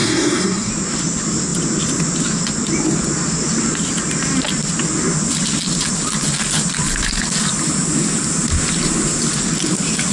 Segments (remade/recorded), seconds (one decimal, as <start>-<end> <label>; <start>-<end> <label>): 0.0-0.7 remade; 0.7-10.1 recorded